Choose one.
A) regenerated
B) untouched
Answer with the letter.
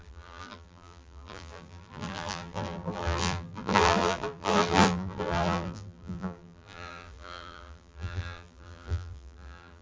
A